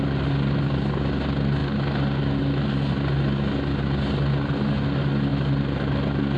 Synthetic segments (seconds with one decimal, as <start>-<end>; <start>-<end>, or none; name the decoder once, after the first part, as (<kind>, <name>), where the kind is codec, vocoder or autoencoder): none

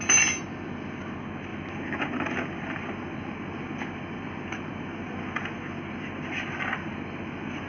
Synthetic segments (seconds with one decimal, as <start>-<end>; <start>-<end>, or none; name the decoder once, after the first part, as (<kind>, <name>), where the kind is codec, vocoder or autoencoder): none

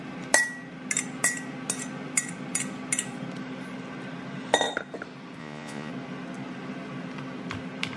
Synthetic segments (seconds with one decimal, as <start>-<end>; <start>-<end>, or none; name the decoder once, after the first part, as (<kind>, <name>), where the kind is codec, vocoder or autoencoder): 5.4-5.9 (vocoder, Vocos)

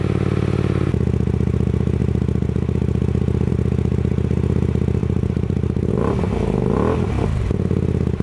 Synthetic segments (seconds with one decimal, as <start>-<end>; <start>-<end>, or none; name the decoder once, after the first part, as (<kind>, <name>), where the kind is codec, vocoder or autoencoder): 5.0-6.1 (vocoder, BigVGAN v2)

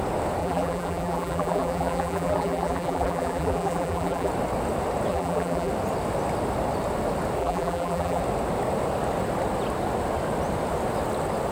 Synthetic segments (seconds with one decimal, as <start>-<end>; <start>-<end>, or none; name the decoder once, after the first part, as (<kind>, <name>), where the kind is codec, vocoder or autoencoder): 0.4-4.3 (vocoder, BigVGAN v2); 5.1-5.7; 7.4-8.2

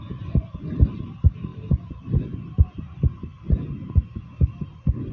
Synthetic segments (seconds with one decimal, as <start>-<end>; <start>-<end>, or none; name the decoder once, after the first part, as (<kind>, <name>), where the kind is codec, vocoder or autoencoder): 0.0-3.3 (vocoder, BigVGAN v2)

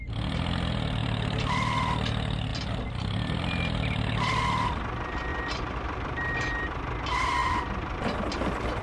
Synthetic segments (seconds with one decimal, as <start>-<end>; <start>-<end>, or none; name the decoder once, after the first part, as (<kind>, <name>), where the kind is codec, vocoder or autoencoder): 1.0-1.8 (vocoder, BigVGAN v2); 2.5-4.8; 5.3-6.3; 7.4-8.8